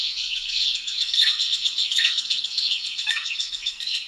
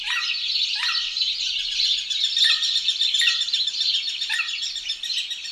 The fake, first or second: first